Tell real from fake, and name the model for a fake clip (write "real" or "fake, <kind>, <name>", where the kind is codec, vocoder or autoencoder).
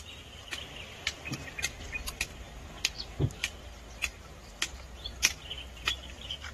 real